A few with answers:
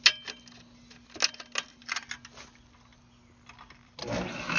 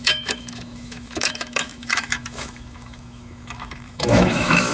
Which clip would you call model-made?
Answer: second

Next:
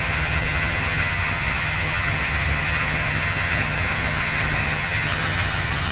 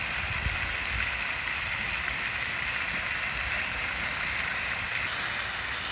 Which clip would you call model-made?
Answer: first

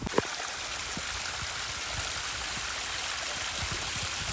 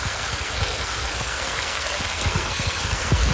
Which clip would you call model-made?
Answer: second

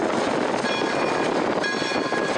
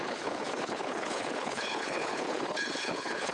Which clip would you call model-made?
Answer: second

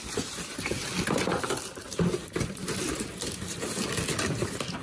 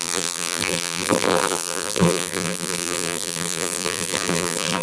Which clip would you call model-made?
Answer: second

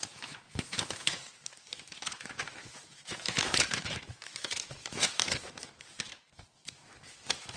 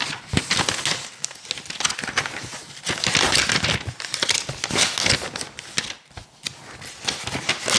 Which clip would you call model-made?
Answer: first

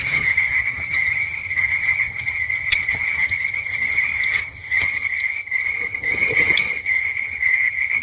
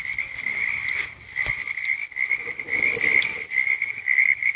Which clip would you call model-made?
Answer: first